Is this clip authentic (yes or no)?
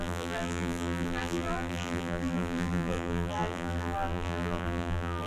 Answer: no